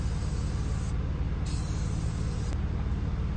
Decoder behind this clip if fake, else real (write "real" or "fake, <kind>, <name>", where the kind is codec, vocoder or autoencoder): real